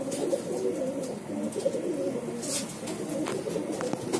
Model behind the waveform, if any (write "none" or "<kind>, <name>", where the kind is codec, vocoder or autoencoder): none